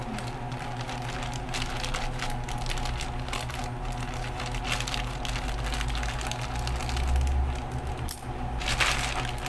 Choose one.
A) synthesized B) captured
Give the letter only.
B